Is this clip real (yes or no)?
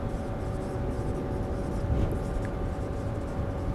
yes